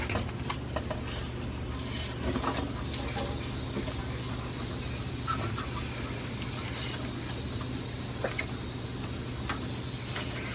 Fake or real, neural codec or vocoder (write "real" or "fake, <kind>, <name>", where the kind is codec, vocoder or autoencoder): real